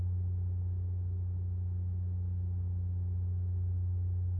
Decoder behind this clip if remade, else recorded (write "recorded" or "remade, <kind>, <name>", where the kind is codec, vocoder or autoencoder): recorded